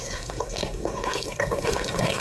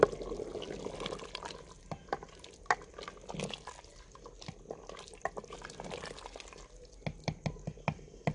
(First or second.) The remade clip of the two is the first